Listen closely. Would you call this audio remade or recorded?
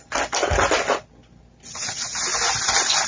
recorded